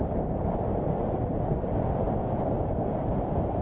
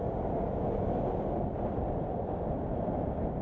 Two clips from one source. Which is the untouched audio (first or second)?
second